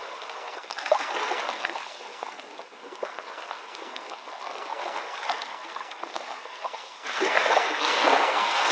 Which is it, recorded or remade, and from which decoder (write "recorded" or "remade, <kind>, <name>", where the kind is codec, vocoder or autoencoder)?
remade, codec, SNAC